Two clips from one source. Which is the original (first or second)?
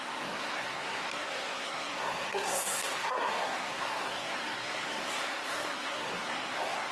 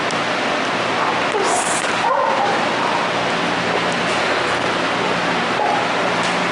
second